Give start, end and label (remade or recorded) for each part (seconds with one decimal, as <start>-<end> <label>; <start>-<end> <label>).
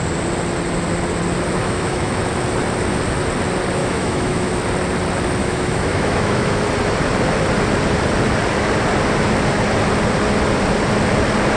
0.0-1.6 recorded; 1.6-2.2 remade; 2.2-3.8 recorded; 3.8-4.5 remade; 4.5-5.4 recorded; 5.4-6.6 remade; 6.6-11.6 recorded